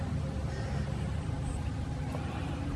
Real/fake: real